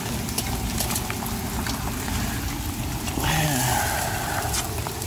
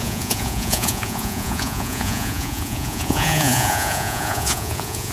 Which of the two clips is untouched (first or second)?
first